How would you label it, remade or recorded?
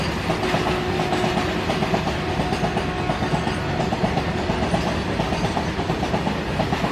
recorded